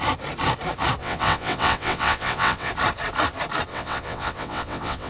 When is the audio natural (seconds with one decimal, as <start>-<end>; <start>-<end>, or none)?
0.0-1.0; 2.7-3.7